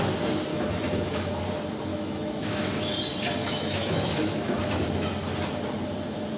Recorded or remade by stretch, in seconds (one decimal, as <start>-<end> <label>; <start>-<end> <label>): 0.0-0.5 recorded; 0.5-1.4 remade; 1.4-1.9 recorded; 1.9-2.7 remade; 2.7-3.4 recorded; 3.4-4.6 remade; 4.6-6.4 recorded